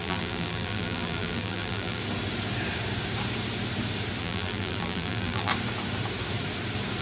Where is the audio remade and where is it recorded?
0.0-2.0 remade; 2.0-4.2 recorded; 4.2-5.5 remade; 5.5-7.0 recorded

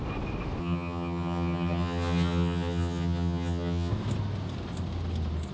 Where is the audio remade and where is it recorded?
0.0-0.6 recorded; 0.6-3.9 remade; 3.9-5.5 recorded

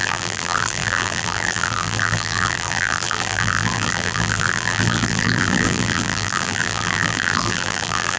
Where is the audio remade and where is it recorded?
0.0-8.2 remade

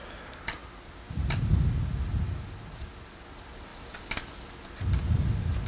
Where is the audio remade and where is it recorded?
0.0-5.7 recorded

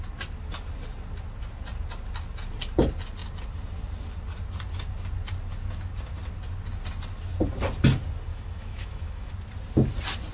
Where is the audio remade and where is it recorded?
0.0-8.3 recorded; 8.3-9.3 remade; 9.3-10.3 recorded

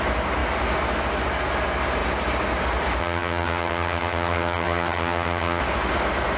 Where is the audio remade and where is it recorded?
0.0-3.0 recorded; 3.0-5.6 remade; 5.6-6.4 recorded

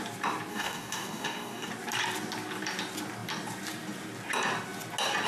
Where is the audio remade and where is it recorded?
0.0-0.5 recorded; 0.5-1.7 remade; 1.7-5.3 recorded